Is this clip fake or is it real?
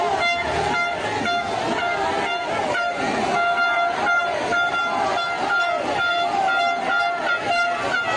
real